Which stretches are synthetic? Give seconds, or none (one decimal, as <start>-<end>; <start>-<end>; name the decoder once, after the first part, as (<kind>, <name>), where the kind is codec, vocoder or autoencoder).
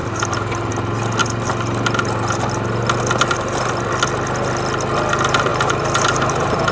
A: 0.0-0.7 (vocoder, BigVGAN v2); 5.5-6.7